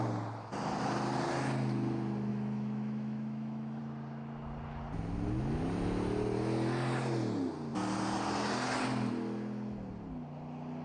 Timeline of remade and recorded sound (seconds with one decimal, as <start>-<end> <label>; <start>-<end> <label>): 0.0-2.3 recorded; 2.3-3.8 remade; 3.8-10.8 recorded